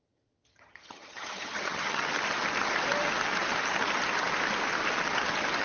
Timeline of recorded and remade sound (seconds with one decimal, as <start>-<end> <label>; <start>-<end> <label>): 0.0-2.0 remade; 2.0-5.6 recorded